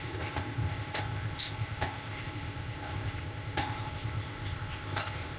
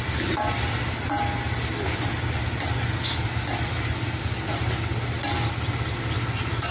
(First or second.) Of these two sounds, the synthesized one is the first